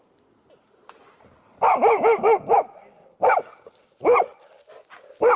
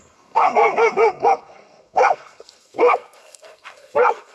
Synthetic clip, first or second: second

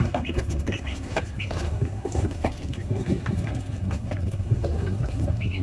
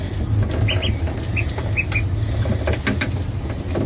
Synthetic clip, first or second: first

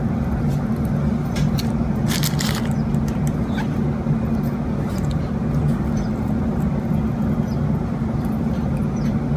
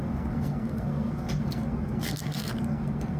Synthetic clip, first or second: second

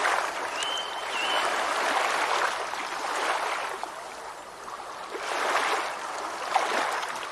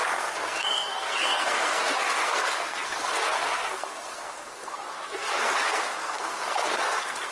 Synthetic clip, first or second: second